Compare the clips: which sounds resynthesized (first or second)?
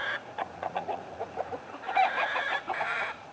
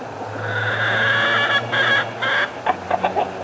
first